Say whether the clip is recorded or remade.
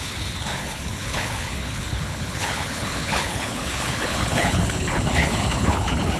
remade